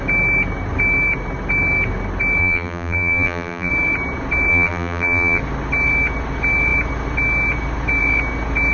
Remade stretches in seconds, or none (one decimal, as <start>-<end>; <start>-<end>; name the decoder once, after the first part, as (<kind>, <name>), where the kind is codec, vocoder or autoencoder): 2.4-3.7 (vocoder, BigVGAN v2); 4.5-5.4